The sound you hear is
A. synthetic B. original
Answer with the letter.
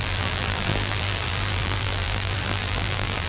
A